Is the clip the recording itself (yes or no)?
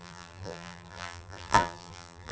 no